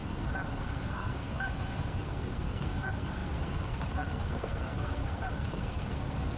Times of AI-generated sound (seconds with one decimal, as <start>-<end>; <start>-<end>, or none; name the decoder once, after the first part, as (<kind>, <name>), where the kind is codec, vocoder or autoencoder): 0.0-6.4 (codec, SNAC)